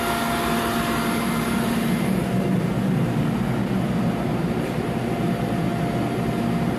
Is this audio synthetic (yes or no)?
no